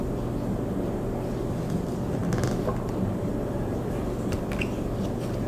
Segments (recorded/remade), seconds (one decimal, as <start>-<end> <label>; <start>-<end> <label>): 0.0-5.5 recorded